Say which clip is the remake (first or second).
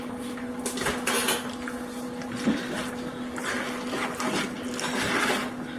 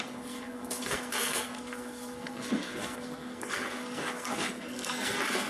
second